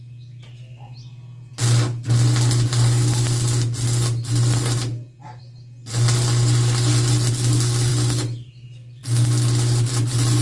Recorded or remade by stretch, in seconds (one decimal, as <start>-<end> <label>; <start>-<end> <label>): 0.0-10.4 recorded